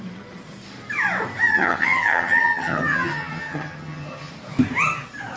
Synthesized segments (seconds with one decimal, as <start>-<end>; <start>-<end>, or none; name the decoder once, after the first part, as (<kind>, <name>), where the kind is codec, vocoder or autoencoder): 1.5-4.3 (vocoder, HiFi-GAN)